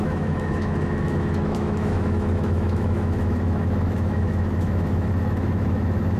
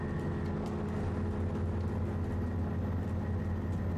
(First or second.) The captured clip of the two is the second